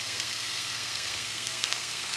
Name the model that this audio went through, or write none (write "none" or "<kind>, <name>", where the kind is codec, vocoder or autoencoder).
codec, SNAC